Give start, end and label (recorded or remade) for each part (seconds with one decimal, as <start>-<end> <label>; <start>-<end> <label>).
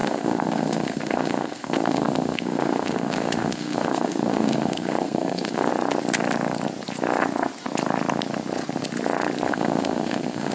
0.0-5.7 remade; 5.7-9.5 recorded; 9.5-10.5 remade